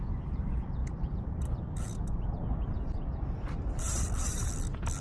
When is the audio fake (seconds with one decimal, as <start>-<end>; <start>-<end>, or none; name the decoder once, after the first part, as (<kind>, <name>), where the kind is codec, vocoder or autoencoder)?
none